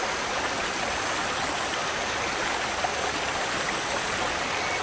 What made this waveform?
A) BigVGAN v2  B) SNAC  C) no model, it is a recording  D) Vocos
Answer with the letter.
C